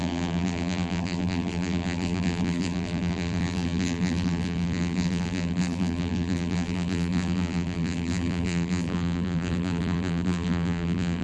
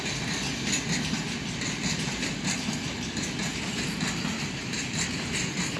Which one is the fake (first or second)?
first